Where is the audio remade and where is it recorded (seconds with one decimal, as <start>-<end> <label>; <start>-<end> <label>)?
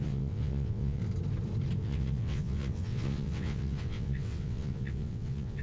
0.0-1.0 remade; 1.0-1.8 recorded; 1.8-5.6 remade